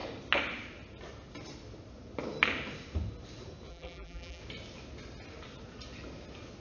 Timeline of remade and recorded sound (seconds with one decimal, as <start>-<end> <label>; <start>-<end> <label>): 0.0-3.7 recorded; 3.7-4.4 remade; 4.4-6.6 recorded